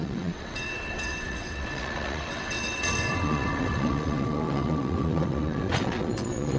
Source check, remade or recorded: remade